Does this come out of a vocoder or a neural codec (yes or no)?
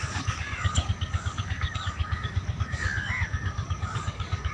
yes